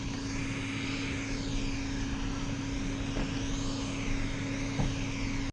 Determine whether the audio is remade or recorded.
recorded